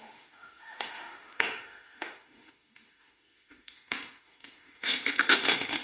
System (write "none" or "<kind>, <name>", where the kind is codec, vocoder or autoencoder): autoencoder, DAC-VAE